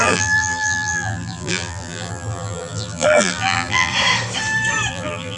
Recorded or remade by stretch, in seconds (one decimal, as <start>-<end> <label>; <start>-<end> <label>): 0.0-3.9 remade; 3.9-4.9 recorded; 4.9-5.4 remade